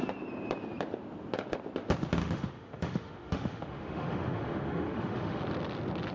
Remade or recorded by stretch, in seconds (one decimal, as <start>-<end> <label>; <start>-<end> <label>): 0.0-2.2 recorded; 2.2-5.4 remade; 5.4-6.1 recorded